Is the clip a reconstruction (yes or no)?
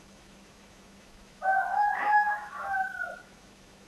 yes